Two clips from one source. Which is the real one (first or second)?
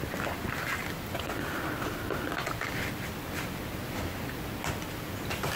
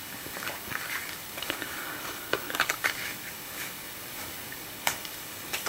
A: first